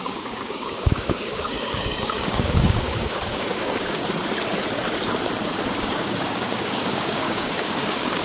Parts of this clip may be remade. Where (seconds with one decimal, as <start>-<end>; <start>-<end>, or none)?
0.0-4.0; 5.8-8.2